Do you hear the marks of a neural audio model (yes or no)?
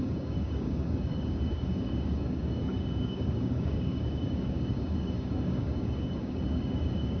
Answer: yes